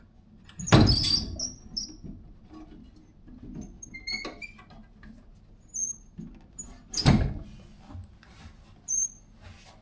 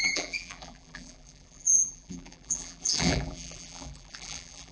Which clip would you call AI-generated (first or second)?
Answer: second